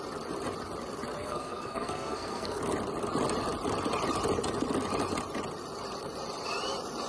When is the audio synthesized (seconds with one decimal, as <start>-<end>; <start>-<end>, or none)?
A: 1.2-2.6